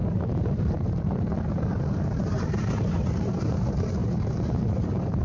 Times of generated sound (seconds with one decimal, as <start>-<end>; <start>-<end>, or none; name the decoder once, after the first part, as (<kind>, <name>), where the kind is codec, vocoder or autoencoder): 0.0-5.2 (vocoder, BigVGAN v2)